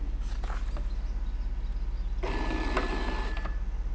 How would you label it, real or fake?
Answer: real